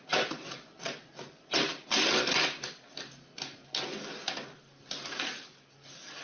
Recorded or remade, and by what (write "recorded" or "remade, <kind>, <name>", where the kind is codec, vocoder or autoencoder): recorded